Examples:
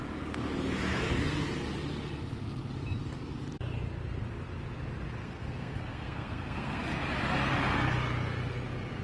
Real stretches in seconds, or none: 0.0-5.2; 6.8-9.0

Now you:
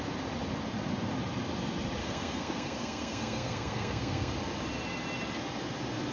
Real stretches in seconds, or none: 0.0-2.0; 4.3-6.1

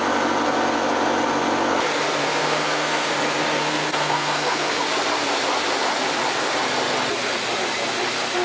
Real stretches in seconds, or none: 0.0-2.2; 3.1-3.6; 4.8-8.4

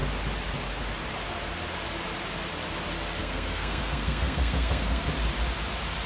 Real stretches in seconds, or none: 0.0-3.2; 5.0-6.1

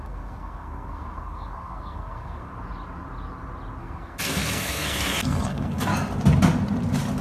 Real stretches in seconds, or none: 2.5-3.8; 5.9-7.2

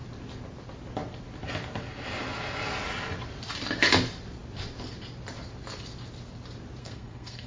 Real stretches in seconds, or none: 0.0-6.8